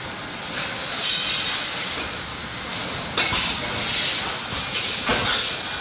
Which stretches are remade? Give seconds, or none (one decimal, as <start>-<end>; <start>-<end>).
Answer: none